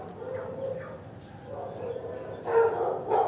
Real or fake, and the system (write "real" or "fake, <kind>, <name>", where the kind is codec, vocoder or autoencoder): real